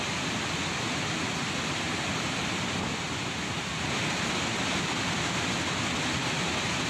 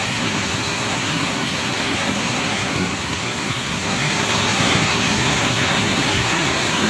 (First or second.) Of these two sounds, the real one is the first